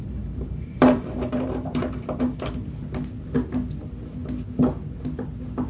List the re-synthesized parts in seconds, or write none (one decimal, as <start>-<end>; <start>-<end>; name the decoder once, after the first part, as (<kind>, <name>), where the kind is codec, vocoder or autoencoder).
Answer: 0.0-2.5 (vocoder, BigVGAN v2)

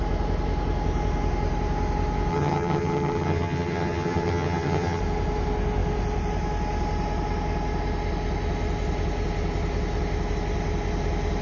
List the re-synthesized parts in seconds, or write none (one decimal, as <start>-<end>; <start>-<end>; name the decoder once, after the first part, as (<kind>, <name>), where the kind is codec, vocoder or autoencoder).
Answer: 2.3-5.0 (vocoder, HiFi-GAN)

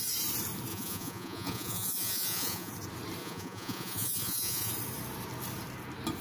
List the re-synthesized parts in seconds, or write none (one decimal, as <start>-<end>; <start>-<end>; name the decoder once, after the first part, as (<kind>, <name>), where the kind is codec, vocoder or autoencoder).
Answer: 0.7-2.7 (vocoder, Vocos); 3.2-4.7

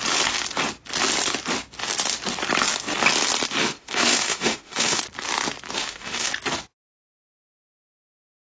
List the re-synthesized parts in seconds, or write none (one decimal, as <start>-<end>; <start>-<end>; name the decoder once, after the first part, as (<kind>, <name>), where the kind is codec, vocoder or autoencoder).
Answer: 3.6-5.0 (autoencoder, DAC-VAE); 5.8-6.3

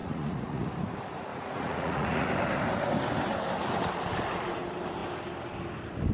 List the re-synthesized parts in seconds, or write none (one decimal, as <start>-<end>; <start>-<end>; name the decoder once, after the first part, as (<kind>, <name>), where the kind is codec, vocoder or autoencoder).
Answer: 0.0-0.7 (vocoder, Vocos); 1.3-2.3

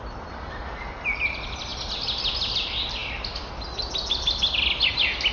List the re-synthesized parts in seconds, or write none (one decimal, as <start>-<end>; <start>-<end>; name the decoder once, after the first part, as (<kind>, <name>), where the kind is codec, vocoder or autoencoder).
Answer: none